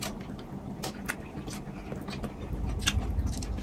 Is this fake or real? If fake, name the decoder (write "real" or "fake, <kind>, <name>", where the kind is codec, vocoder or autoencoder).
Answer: real